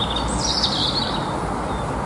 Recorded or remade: recorded